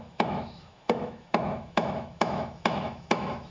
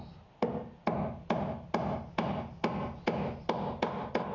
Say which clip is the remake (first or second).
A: first